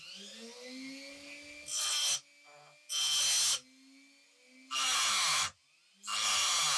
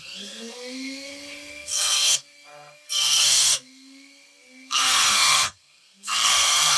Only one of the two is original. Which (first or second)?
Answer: first